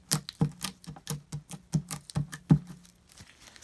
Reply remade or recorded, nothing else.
recorded